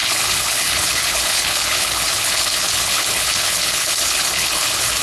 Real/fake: fake